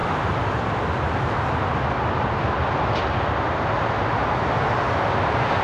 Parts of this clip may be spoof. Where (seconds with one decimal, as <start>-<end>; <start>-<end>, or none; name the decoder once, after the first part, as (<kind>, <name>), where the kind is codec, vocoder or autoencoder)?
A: none